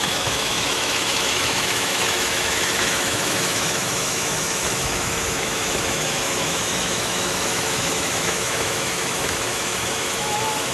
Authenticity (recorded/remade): remade